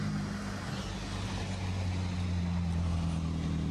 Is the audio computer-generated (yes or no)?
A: no